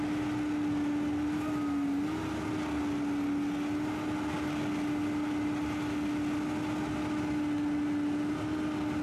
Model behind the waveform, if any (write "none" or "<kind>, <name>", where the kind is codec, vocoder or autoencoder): none